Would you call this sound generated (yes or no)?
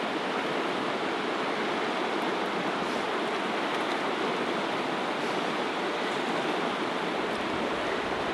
no